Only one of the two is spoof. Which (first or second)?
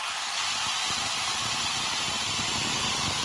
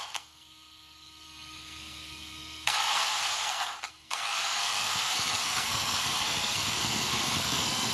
second